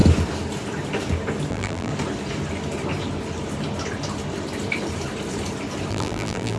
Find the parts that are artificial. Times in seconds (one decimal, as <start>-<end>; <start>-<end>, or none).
1.5-1.9; 5.9-6.6